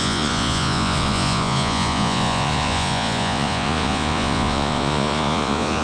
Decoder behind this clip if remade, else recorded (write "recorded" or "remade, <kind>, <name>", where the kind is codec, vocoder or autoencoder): remade, vocoder, Vocos